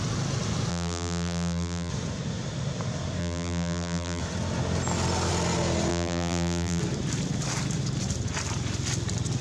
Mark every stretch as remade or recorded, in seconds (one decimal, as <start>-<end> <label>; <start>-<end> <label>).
0.0-0.7 recorded; 0.7-1.9 remade; 1.9-3.2 recorded; 3.2-4.2 remade; 4.2-5.9 recorded; 5.9-6.8 remade; 6.8-9.4 recorded